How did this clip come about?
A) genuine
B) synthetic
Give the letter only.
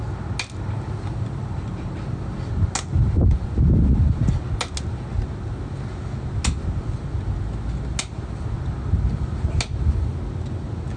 A